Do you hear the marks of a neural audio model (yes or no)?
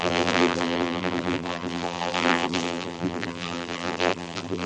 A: yes